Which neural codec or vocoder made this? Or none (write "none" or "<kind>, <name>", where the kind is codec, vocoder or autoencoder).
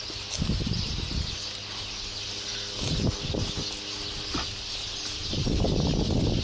none